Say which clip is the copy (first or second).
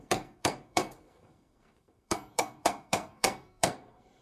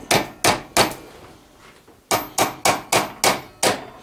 first